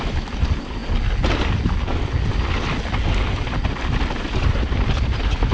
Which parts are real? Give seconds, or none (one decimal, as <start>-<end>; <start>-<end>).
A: 0.8-4.1

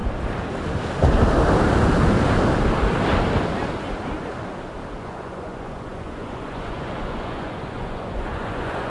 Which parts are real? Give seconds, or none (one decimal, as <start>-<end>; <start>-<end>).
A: 0.0-5.0

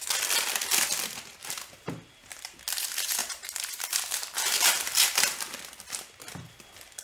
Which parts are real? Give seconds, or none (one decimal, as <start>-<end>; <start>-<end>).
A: 0.0-1.4; 2.6-3.2; 5.4-7.0

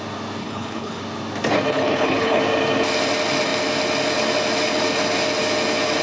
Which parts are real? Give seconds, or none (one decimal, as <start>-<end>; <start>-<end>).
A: 0.0-0.4; 1.0-1.7; 2.4-6.0

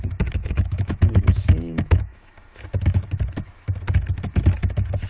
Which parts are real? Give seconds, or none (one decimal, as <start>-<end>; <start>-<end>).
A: 0.0-0.4; 2.3-5.1

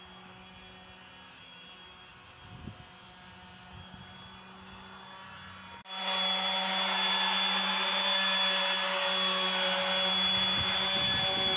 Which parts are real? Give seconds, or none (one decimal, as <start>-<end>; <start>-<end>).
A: 0.0-11.6